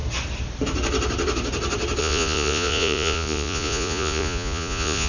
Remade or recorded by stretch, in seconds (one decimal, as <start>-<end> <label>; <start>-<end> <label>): 0.0-2.0 recorded; 2.0-5.1 remade